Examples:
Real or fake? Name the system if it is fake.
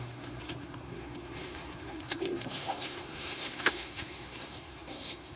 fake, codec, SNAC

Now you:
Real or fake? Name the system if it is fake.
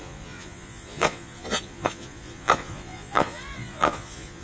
fake, vocoder, Vocos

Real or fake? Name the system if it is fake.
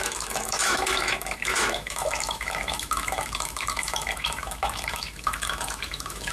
fake, autoencoder, DAC-VAE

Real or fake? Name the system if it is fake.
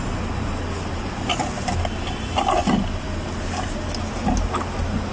real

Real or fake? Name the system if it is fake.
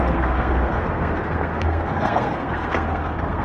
fake, codec, SNAC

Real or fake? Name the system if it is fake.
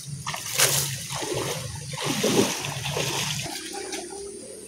real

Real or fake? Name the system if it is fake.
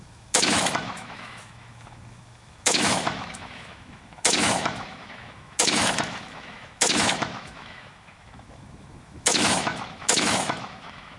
fake, autoencoder, DAC-VAE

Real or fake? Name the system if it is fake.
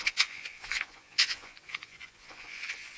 fake, vocoder, Vocos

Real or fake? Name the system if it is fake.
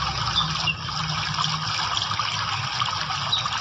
real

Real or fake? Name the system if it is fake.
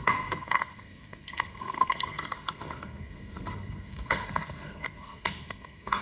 fake, codec, SNAC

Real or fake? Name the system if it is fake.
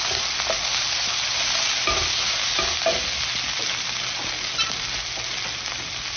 real